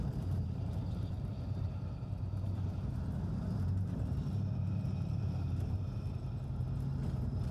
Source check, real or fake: fake